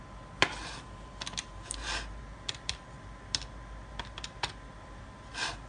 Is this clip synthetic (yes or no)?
no